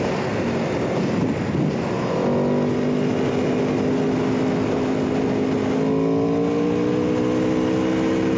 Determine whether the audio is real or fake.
real